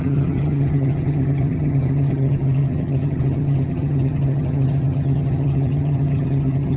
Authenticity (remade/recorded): remade